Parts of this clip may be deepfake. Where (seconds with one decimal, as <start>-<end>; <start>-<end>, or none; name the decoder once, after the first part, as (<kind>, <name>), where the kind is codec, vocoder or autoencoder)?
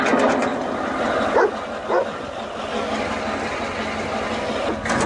none